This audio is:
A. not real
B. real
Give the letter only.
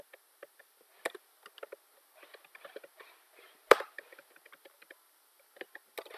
B